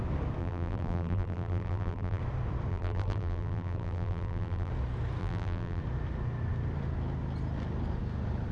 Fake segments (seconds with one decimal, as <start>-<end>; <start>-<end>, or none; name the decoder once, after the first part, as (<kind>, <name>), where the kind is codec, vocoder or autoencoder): 0.4-2.2 (vocoder, BigVGAN v2); 2.7-4.7; 5.2-5.8

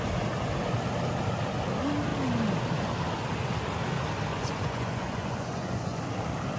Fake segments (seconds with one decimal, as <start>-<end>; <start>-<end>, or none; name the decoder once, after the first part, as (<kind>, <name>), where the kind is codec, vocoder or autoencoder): 4.3-6.0 (vocoder, Vocos)

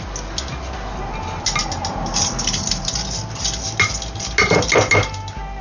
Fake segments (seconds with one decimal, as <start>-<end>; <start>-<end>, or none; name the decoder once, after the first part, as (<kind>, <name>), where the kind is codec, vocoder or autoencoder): none